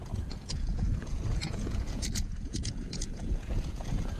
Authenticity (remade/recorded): remade